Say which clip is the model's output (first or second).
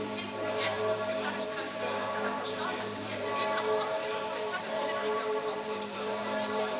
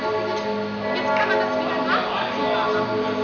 first